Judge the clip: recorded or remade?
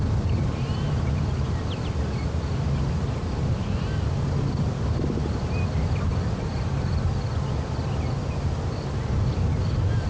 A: recorded